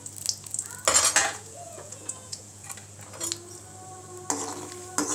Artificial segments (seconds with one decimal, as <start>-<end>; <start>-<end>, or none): 1.2-2.7